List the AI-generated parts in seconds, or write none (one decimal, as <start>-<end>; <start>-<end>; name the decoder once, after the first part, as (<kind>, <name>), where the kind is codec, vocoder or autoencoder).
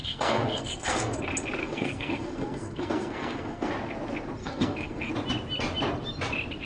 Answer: 0.0-1.2 (codec, SNAC); 1.6-3.7; 4.4-5.1